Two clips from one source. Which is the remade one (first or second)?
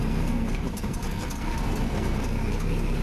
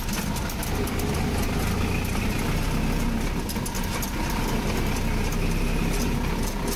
first